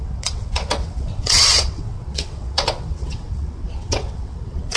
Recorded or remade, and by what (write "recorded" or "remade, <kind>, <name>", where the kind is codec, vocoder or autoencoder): remade, vocoder, WaveNeXt